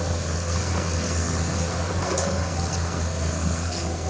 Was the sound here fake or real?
fake